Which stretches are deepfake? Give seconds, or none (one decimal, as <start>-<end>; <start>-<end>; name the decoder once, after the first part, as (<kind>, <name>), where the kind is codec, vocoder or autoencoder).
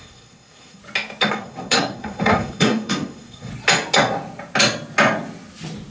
0.0-0.8 (codec, SNAC); 1.3-3.5